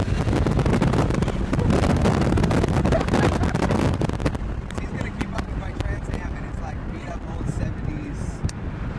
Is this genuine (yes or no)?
yes